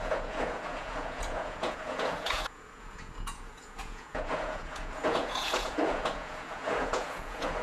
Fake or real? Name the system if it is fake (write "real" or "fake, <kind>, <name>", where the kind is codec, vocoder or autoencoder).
fake, vocoder, Vocos